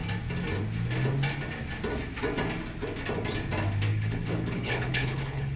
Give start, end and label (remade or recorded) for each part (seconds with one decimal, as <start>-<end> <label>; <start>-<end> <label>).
0.0-3.9 recorded; 3.9-5.6 remade